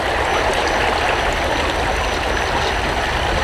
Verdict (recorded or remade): recorded